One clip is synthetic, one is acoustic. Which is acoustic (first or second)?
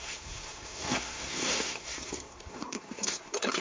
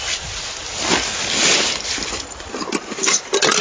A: second